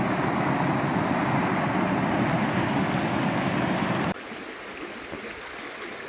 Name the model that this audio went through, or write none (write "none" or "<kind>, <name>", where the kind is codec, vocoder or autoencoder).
none